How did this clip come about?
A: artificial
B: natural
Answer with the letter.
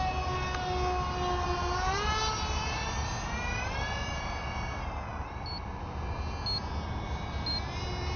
B